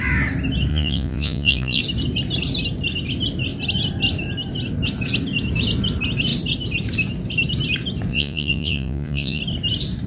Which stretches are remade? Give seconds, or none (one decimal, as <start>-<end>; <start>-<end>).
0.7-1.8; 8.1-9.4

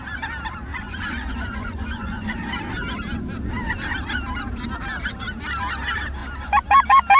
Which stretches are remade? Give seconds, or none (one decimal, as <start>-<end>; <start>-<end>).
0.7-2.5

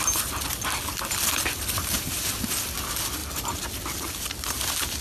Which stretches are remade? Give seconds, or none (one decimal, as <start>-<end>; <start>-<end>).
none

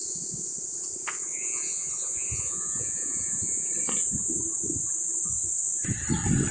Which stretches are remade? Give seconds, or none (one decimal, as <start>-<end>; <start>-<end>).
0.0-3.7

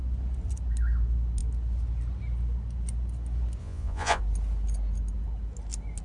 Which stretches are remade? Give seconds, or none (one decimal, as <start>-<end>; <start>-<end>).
3.6-4.2